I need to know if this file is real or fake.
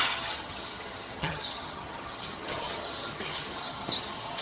fake